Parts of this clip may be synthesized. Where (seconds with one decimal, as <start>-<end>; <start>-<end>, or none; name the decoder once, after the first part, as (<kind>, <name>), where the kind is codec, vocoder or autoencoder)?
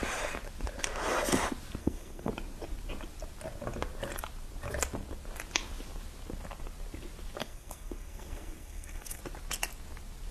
1.8-2.3 (codec, SNAC); 7.4-9.2